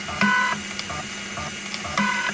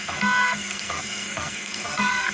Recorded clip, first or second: first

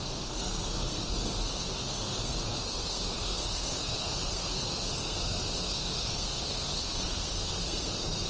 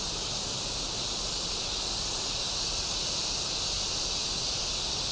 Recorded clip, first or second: second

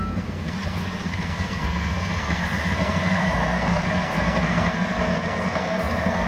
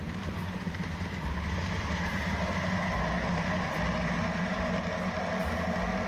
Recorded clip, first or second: second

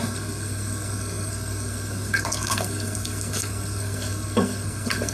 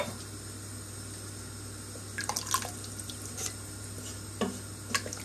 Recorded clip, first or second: second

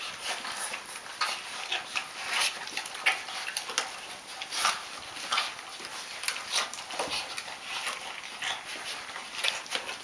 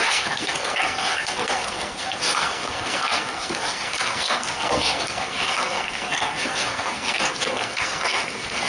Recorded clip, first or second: first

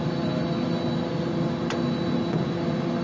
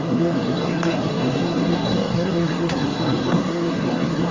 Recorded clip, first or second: first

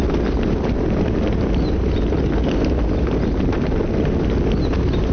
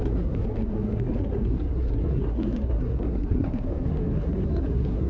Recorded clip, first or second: first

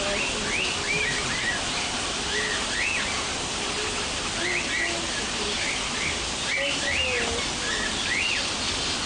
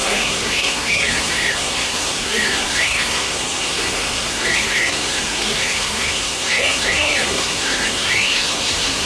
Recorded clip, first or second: first